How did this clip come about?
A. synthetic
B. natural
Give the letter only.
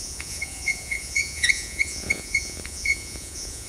A